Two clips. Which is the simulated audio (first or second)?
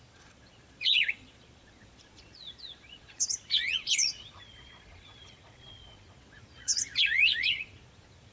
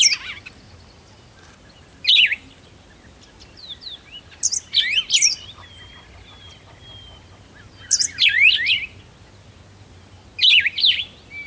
first